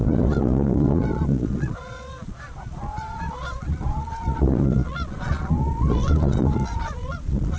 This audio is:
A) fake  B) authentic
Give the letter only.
A